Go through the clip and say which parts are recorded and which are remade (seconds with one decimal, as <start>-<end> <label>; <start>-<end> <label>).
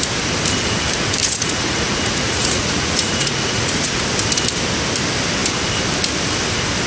0.0-1.2 recorded; 1.2-4.0 remade; 4.0-6.9 recorded